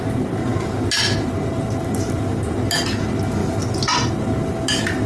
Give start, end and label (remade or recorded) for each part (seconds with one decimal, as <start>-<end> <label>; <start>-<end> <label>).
0.0-5.1 recorded